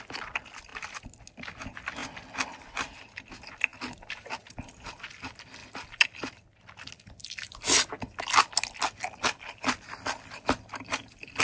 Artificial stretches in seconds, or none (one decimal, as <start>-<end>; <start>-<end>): none